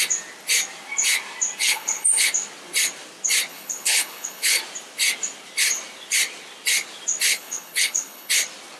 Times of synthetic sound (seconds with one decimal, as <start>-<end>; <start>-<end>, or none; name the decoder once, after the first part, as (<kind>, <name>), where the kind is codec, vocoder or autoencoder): 1.6-2.3 (codec, HILCodec); 3.5-4.6; 7.3-8.3